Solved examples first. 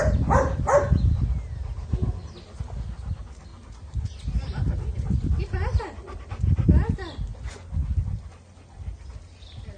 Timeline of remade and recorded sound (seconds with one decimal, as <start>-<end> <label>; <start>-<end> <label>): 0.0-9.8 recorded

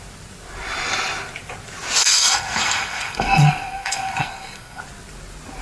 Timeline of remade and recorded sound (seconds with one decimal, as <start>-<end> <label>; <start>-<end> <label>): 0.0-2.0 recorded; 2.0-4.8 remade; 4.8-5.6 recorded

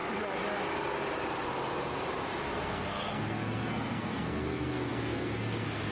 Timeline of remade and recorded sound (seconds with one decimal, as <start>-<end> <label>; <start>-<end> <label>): 0.0-2.5 recorded; 2.5-5.9 remade

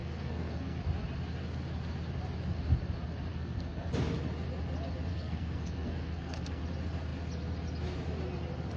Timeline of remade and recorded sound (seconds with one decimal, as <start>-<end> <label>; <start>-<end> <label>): 0.0-0.8 remade; 0.8-3.3 recorded; 3.3-3.9 remade; 3.9-5.1 recorded; 5.1-6.6 remade; 6.6-8.8 recorded

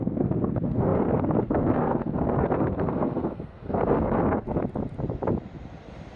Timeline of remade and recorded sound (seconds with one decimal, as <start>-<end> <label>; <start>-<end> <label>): 0.0-4.6 remade; 4.6-6.2 recorded

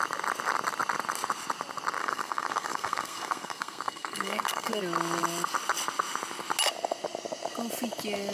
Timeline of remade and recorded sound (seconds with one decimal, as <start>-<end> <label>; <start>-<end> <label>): 0.0-2.0 recorded; 2.0-4.8 remade; 4.8-8.3 recorded